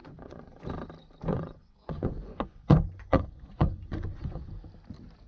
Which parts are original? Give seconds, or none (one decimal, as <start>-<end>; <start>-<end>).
0.6-1.3; 4.5-5.3